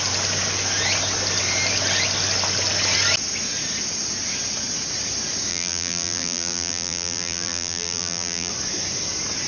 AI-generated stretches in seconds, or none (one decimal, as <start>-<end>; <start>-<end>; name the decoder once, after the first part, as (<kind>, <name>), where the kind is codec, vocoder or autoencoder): 5.5-8.5 (vocoder, BigVGAN v2)